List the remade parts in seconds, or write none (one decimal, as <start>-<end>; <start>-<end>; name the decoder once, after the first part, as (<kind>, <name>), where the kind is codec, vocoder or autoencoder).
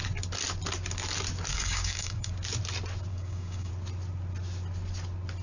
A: 1.5-2.3 (codec, DAC); 3.1-3.7